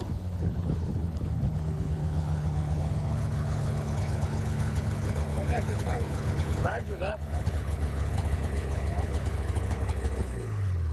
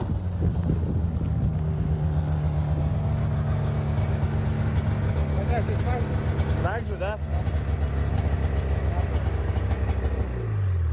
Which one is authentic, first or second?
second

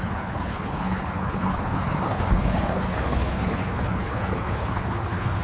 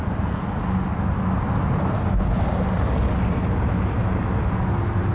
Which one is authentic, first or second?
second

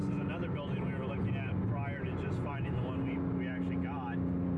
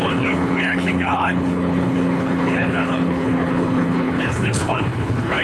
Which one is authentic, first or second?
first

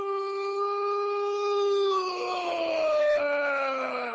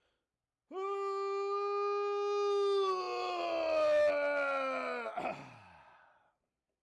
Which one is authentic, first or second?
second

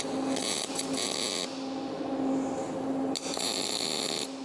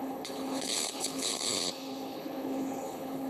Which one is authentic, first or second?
first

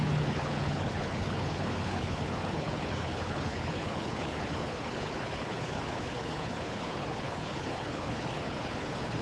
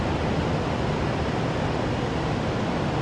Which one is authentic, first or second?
second